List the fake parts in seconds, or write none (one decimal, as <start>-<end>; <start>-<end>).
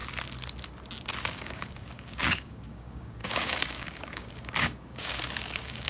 1.2-5.9